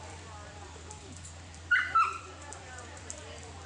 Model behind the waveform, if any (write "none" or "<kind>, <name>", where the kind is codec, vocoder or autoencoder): vocoder, BigVGAN v2